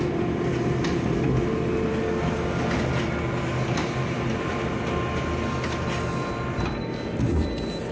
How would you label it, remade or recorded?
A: recorded